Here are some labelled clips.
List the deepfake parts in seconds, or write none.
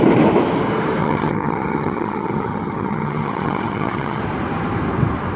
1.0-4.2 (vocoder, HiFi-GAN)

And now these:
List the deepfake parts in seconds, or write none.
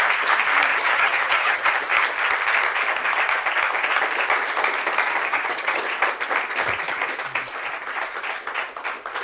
0.7-1.7 (vocoder, HiFi-GAN); 5.3-5.8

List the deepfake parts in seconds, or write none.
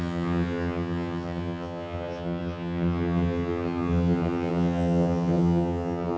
0.0-6.2 (vocoder, HiFi-GAN)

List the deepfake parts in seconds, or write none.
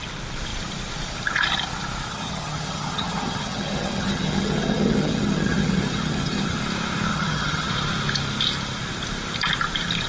2.1-6.6 (vocoder, HiFi-GAN); 7.1-7.7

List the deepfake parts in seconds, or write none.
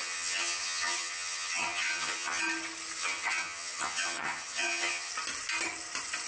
0.0-2.4 (vocoder, HiFi-GAN); 3.0-5.1